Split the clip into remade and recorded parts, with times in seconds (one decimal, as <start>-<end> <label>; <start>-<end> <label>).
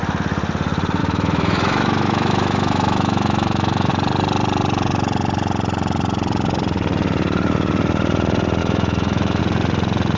0.0-1.0 recorded; 1.0-3.9 remade; 3.9-8.6 recorded; 8.6-9.4 remade; 9.4-10.2 recorded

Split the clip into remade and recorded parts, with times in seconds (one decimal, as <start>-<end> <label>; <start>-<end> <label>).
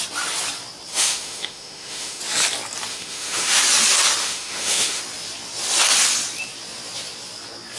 0.0-0.9 recorded; 0.9-2.2 remade; 2.2-2.9 recorded; 2.9-3.6 remade; 3.6-4.2 recorded; 4.2-5.0 remade; 5.0-7.8 recorded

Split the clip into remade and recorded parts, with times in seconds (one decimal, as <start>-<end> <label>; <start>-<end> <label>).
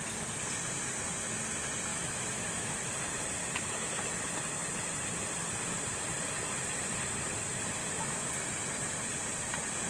0.0-1.9 recorded; 1.9-2.9 remade; 2.9-3.4 recorded; 3.4-4.2 remade; 4.2-7.8 recorded; 7.8-8.3 remade; 8.3-9.9 recorded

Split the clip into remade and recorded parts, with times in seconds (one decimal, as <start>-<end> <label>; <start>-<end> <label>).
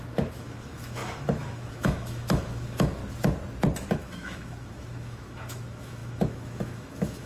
0.0-3.0 remade; 3.0-3.9 recorded; 3.9-7.3 remade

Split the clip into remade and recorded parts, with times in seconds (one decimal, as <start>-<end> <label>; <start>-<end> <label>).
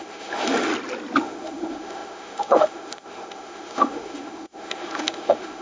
0.0-0.7 remade; 0.7-1.2 recorded; 1.2-5.6 remade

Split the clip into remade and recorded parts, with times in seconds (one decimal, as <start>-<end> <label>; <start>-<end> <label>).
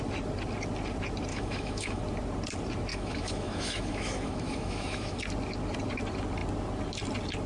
0.0-1.3 recorded; 1.3-2.0 remade; 2.0-2.9 recorded; 2.9-5.2 remade; 5.2-7.5 recorded